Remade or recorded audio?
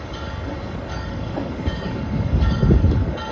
remade